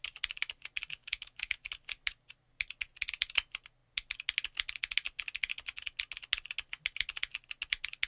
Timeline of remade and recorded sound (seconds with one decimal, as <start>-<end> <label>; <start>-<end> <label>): 0.0-1.0 recorded; 1.0-1.7 remade; 1.7-8.1 recorded